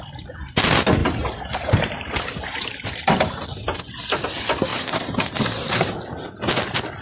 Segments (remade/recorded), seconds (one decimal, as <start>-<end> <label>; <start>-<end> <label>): 0.0-1.0 recorded; 1.0-3.8 remade; 3.8-4.7 recorded; 4.7-5.3 remade; 5.3-7.0 recorded